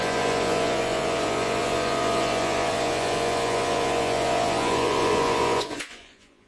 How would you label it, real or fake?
fake